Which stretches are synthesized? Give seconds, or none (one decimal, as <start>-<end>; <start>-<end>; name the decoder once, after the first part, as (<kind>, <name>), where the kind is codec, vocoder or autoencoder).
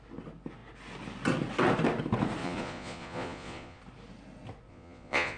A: 2.4-3.8 (vocoder, Vocos); 4.7-5.4